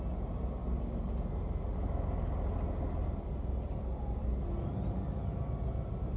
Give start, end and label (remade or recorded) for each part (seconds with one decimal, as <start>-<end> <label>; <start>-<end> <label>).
0.0-6.2 recorded

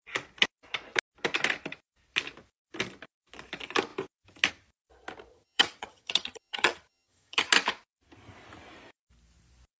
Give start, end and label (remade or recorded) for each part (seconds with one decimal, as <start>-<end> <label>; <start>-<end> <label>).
0.0-5.3 recorded; 5.3-7.5 remade; 7.5-9.8 recorded

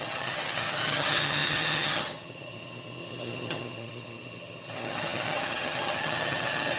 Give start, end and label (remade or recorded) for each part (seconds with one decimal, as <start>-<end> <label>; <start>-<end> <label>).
0.0-6.8 remade

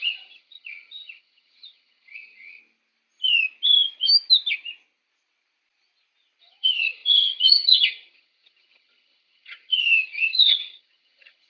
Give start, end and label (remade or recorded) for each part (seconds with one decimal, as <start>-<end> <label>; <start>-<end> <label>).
0.0-2.6 remade; 2.6-6.4 recorded; 6.4-11.5 remade